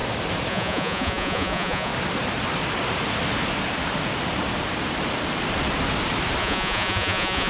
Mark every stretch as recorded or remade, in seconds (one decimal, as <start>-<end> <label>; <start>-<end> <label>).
0.0-0.5 recorded; 0.5-1.9 remade; 1.9-6.4 recorded; 6.4-7.5 remade